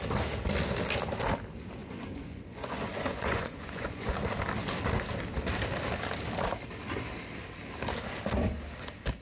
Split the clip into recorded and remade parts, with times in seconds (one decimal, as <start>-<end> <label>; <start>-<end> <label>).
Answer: 0.0-1.8 recorded; 1.8-4.1 remade; 4.1-9.2 recorded